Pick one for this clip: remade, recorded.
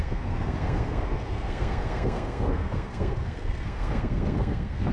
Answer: remade